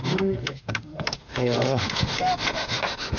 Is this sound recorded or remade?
remade